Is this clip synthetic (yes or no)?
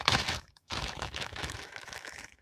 yes